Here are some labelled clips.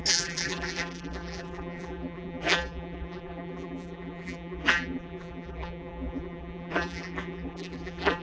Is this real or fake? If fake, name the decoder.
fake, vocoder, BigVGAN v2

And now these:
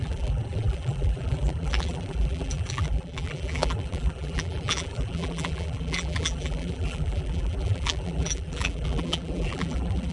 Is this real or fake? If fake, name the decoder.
fake, vocoder, BigVGAN v2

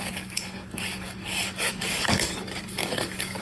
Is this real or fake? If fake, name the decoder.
fake, codec, DAC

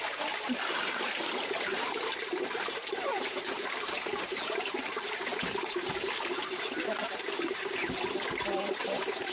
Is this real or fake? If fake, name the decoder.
fake, vocoder, BigVGAN v2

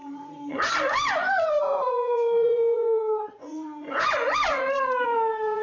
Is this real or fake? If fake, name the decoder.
fake, vocoder, Vocos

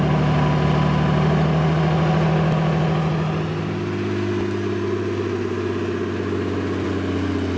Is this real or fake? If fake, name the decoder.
real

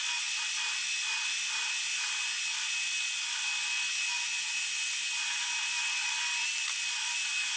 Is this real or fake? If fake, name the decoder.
real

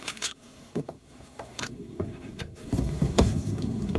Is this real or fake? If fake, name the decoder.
fake, codec, SNAC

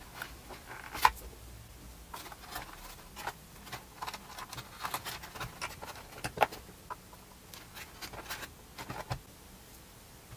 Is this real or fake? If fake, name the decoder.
real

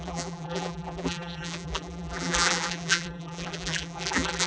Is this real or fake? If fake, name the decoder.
fake, vocoder, BigVGAN v2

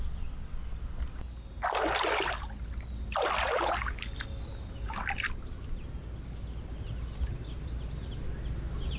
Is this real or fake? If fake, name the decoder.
real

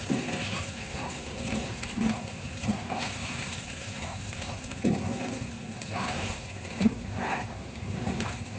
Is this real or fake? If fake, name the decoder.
fake, codec, SNAC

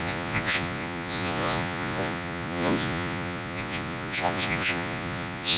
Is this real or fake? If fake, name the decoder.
fake, vocoder, Vocos